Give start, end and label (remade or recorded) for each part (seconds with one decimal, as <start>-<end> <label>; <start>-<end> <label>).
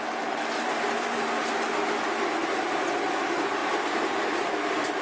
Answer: 0.0-5.0 recorded